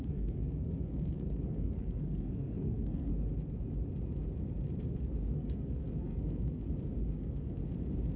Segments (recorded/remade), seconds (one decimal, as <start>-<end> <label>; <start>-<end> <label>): 0.0-3.1 remade; 3.1-4.8 recorded; 4.8-6.6 remade; 6.6-7.1 recorded; 7.1-7.6 remade; 7.6-8.2 recorded

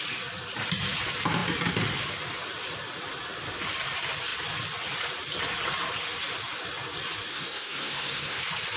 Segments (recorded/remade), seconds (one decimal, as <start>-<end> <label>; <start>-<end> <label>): 0.0-7.3 recorded; 7.3-8.4 remade; 8.4-8.8 recorded

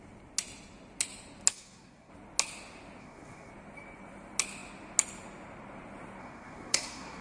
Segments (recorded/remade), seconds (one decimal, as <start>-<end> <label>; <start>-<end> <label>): 0.0-1.5 recorded; 1.5-2.1 remade; 2.1-3.0 recorded; 3.0-3.5 remade; 3.5-6.2 recorded; 6.2-7.2 remade